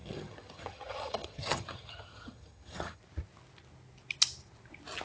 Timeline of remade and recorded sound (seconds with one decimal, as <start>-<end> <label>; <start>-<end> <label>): 0.0-3.0 remade; 3.0-5.0 recorded